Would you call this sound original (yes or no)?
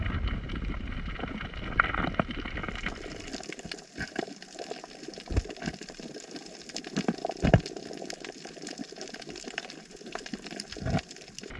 yes